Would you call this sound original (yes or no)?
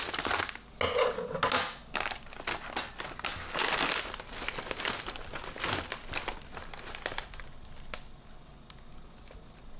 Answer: yes